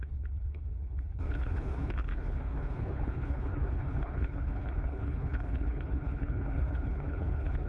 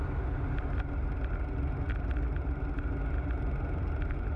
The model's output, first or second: first